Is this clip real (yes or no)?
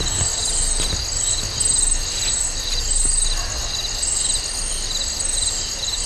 yes